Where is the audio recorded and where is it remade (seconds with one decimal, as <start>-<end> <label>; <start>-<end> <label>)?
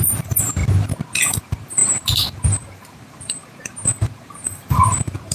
0.0-0.6 remade; 0.6-1.4 recorded; 1.4-5.3 remade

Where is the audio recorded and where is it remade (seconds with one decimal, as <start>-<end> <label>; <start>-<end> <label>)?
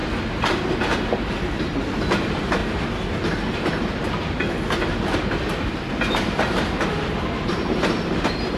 0.0-0.5 recorded; 0.5-0.9 remade; 0.9-2.2 recorded; 2.2-2.6 remade; 2.6-4.0 recorded; 4.0-8.6 remade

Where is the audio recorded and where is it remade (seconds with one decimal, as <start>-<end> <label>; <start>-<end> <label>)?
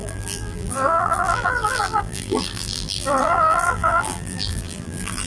0.0-5.3 remade